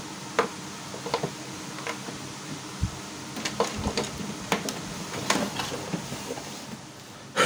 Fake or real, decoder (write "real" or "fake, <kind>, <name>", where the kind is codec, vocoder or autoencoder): real